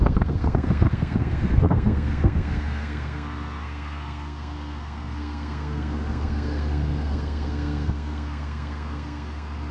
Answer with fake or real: fake